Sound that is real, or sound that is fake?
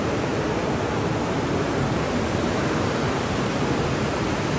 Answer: real